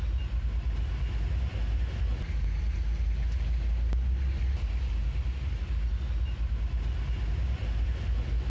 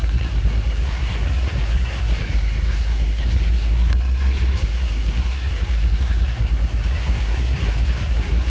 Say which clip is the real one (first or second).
first